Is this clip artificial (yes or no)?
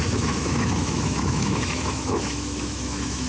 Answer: yes